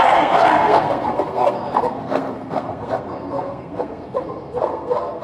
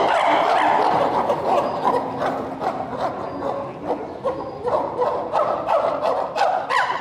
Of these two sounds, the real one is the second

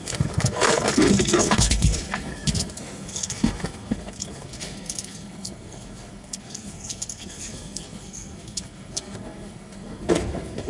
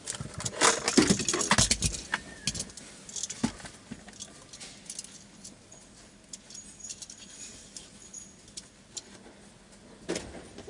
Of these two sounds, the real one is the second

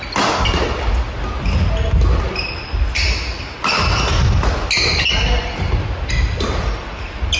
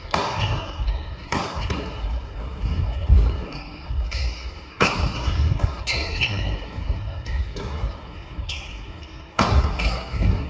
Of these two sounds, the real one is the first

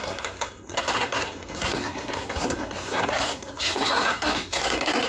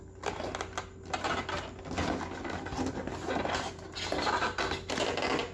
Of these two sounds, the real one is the second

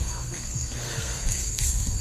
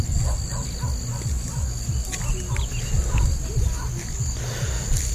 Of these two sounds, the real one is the second